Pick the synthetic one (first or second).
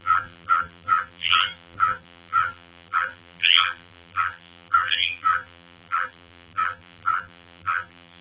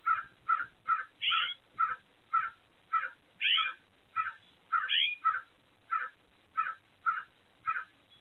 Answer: first